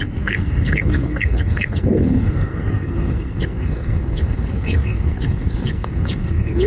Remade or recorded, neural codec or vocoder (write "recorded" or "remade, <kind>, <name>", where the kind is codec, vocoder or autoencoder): remade, codec, SNAC